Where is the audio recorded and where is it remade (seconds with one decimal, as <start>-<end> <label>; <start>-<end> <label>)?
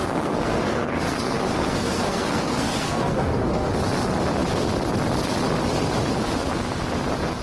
0.0-3.7 remade; 3.7-7.4 recorded